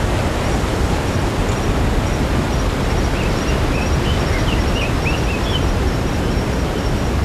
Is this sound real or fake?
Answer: real